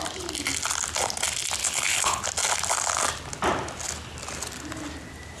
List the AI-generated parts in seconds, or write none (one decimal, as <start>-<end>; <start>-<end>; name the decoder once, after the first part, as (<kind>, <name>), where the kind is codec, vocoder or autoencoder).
1.6-2.2 (codec, HILCodec)